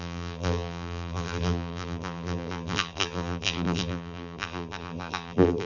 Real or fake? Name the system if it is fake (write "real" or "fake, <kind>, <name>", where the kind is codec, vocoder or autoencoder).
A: fake, vocoder, BigVGAN v2